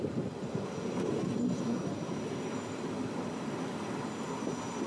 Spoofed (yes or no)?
no